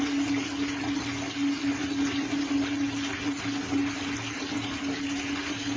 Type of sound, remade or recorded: recorded